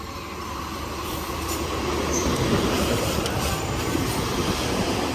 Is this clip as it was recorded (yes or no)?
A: no